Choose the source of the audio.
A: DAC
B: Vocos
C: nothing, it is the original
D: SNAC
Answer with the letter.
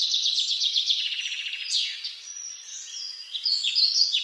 B